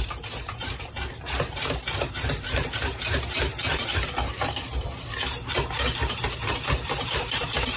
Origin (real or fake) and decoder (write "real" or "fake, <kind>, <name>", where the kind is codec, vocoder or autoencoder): fake, vocoder, BigVGAN v2